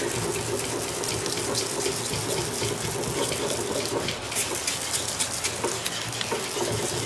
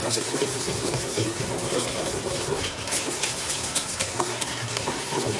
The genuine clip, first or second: first